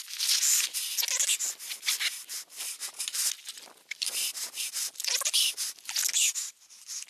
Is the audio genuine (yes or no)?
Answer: yes